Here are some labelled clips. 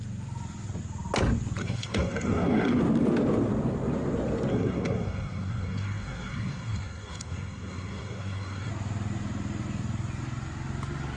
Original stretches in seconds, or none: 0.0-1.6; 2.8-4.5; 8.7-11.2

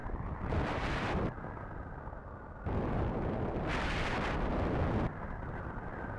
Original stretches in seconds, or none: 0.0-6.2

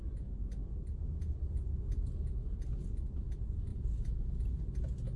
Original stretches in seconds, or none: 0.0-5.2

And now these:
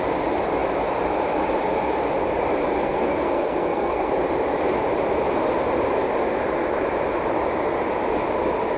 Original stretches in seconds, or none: 0.0-2.8; 4.1-8.8